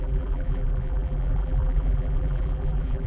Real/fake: fake